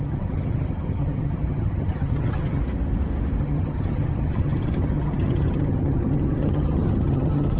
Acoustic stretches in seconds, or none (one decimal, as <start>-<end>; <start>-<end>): 2.6-3.4